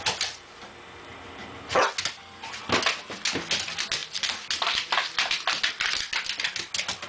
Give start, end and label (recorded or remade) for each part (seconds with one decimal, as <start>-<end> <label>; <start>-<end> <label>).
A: 0.0-7.1 recorded